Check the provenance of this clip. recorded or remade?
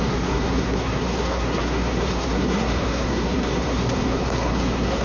remade